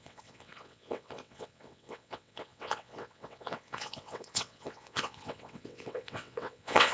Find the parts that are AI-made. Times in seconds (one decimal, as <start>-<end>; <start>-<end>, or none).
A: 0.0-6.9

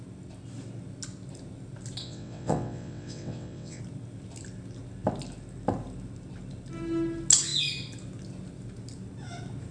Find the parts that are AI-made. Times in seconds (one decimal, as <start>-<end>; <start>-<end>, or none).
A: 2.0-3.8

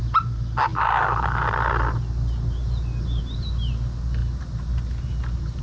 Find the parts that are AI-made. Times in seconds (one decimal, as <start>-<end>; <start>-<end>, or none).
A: none

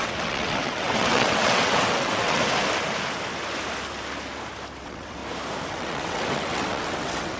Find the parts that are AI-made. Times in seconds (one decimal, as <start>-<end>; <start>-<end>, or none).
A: 0.0-2.4; 4.8-5.2; 5.7-7.4

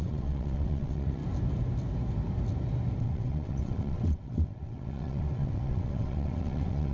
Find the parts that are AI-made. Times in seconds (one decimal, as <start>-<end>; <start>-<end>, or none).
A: 0.0-1.2; 3.0-6.9

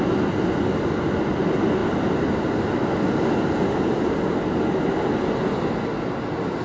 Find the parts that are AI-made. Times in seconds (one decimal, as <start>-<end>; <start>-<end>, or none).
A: none

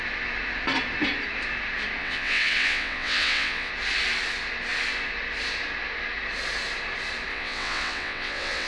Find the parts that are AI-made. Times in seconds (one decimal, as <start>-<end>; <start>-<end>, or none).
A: 2.0-3.7; 7.3-8.7